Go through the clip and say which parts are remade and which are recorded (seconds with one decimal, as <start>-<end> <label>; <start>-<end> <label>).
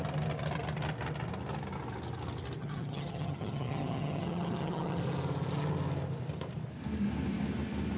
0.0-2.6 recorded; 2.6-5.0 remade; 5.0-8.0 recorded